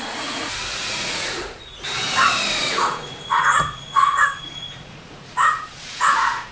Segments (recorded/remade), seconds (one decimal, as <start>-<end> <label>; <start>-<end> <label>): 0.0-1.7 remade; 1.7-2.6 recorded; 2.6-6.5 remade